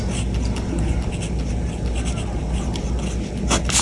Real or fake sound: real